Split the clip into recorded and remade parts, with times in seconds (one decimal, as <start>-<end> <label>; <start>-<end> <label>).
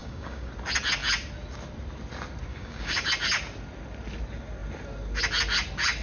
0.0-0.5 remade; 0.5-2.5 recorded; 2.5-3.1 remade; 3.1-6.0 recorded